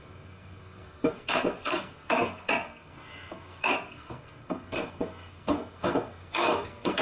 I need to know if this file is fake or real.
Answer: fake